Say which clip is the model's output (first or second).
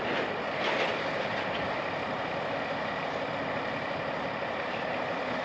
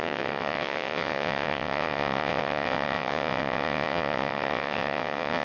second